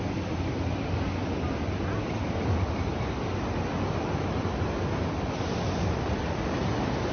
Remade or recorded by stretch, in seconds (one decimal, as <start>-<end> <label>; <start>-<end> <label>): 0.0-7.1 recorded